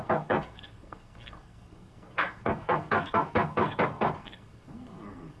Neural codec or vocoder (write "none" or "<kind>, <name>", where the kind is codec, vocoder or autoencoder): codec, SNAC